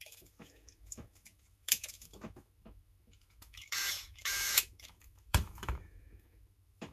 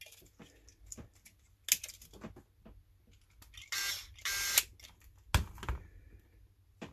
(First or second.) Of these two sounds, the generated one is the first